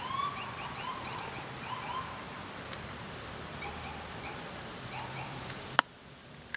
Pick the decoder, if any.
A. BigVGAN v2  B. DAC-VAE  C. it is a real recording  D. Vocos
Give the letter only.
A